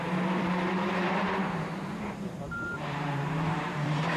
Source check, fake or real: fake